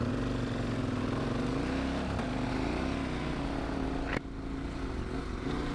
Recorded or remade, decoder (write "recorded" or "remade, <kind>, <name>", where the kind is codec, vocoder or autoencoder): recorded